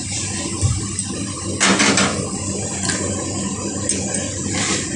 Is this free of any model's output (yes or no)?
yes